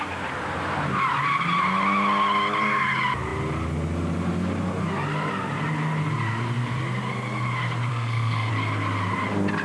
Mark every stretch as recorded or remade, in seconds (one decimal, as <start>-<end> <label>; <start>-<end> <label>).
0.0-7.9 recorded; 7.9-8.5 remade; 8.5-9.6 recorded